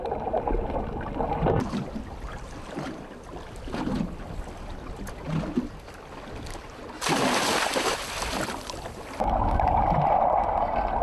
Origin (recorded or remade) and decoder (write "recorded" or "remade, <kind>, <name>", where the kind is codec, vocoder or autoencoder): recorded